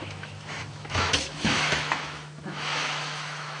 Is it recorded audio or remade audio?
remade